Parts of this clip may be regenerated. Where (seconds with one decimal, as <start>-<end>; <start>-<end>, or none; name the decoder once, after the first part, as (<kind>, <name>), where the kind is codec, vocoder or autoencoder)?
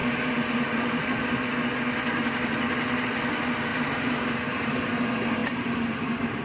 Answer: 0.0-1.1 (vocoder, BigVGAN v2); 3.7-4.9; 5.4-6.4